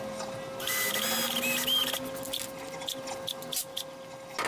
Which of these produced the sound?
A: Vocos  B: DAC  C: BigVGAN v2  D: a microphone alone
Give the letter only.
D